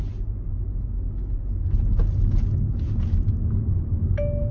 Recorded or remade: recorded